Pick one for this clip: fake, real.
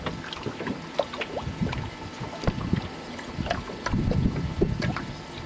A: real